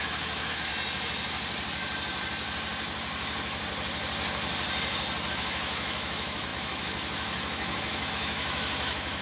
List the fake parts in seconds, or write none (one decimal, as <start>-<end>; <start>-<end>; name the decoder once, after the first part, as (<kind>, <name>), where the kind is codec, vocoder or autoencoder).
0.0-0.7 (autoencoder, DAC-VAE); 5.3-9.2